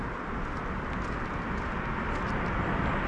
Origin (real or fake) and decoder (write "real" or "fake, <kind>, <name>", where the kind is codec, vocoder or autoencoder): real